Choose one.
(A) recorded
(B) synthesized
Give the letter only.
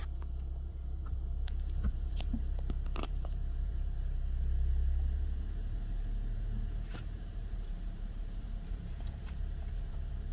B